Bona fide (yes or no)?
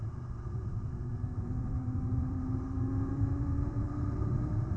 no